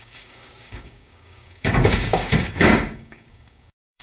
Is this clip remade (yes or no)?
yes